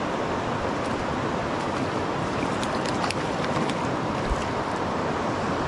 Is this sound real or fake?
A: real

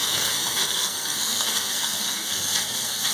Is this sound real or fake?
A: fake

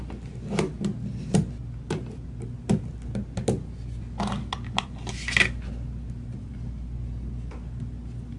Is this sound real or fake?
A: real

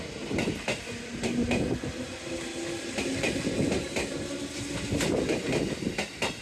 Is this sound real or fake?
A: real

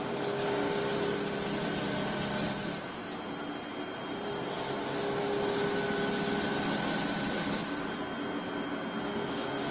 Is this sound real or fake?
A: real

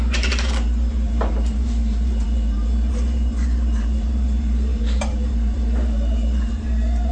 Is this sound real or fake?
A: fake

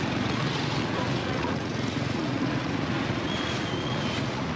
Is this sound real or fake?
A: fake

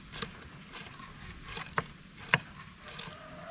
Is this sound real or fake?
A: real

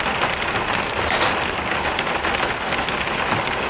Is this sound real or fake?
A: real